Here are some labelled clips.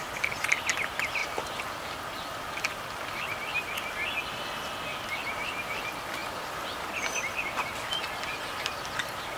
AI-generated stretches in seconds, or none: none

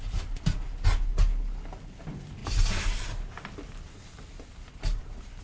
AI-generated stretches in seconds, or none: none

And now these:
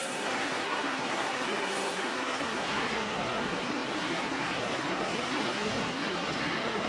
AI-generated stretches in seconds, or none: 0.0-6.9 (codec, SNAC)